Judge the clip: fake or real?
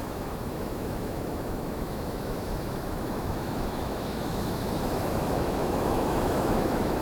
fake